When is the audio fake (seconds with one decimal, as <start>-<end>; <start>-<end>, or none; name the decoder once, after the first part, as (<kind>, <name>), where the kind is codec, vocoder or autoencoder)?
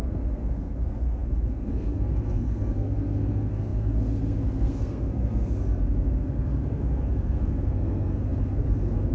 0.0-9.1 (codec, SNAC)